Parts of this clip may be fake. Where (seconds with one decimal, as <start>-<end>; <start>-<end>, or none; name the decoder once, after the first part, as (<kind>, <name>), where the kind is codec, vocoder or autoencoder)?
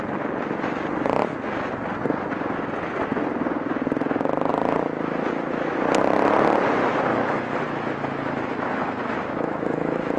7.1-10.2 (autoencoder, DAC-VAE)